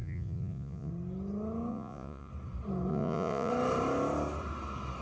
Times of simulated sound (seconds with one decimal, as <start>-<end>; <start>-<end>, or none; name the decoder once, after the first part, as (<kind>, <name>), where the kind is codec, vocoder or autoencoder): 0.0-0.9 (vocoder, Vocos); 1.7-2.3; 2.9-3.5